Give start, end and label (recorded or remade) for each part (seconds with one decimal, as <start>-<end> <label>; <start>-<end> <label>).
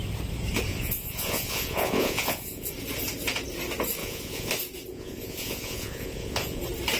0.0-0.7 recorded; 0.7-2.7 remade; 2.7-4.0 recorded; 4.0-4.5 remade; 4.5-4.9 recorded; 4.9-6.6 remade; 6.6-7.0 recorded